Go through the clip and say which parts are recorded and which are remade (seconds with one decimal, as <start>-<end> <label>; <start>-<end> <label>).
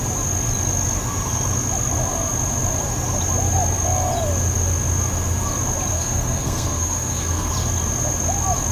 0.0-5.9 recorded; 5.9-7.5 remade; 7.5-8.7 recorded